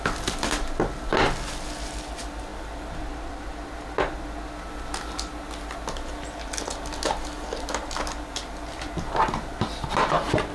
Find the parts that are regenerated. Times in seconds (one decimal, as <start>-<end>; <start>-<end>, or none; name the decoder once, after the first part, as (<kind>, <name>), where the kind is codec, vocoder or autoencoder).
2.5-3.5 (vocoder, BigVGAN v2)